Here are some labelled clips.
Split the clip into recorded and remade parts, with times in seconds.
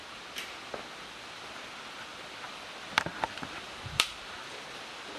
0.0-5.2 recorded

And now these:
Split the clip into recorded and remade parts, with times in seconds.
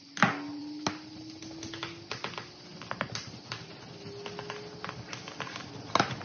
0.0-6.2 recorded